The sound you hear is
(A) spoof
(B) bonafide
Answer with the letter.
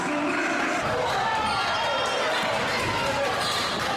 B